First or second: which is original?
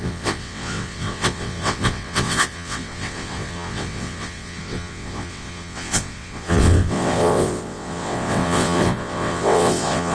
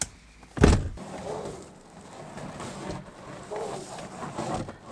second